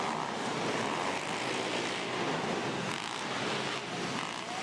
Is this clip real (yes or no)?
yes